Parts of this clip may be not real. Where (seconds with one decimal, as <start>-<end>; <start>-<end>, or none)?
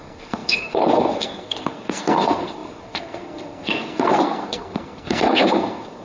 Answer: 0.0-6.0